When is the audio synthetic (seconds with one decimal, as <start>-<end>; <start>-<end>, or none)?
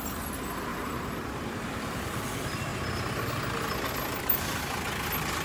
0.7-1.3